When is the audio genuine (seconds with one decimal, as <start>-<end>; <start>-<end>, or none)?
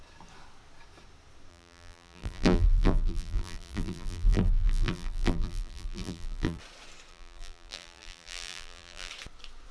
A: 0.0-1.5; 6.6-7.1; 9.1-9.7